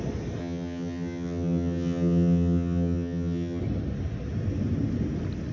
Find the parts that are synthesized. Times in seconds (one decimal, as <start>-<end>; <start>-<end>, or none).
0.4-3.6